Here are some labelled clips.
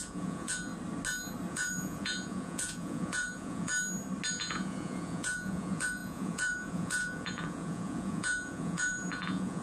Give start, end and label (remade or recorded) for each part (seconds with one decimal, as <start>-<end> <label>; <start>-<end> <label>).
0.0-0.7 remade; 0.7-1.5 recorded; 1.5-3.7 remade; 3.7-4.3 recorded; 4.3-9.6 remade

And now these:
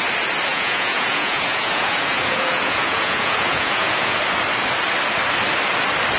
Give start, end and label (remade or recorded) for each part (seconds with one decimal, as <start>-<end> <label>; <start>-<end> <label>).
0.0-0.5 recorded; 0.5-4.2 remade; 4.2-6.2 recorded

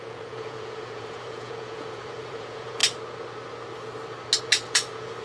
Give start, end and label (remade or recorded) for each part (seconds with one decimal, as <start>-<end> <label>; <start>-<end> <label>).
0.0-2.8 remade; 2.8-4.4 recorded; 4.4-5.2 remade

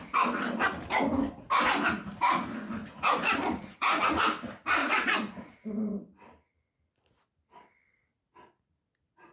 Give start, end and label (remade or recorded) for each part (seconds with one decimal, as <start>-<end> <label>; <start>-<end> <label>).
0.0-2.8 recorded; 2.8-4.2 remade; 4.2-4.8 recorded; 4.8-5.7 remade; 5.7-9.3 recorded

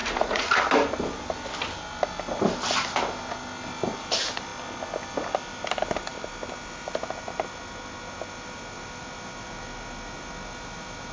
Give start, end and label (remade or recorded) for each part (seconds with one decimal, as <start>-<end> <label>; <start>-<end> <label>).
0.0-0.6 remade; 0.6-11.1 recorded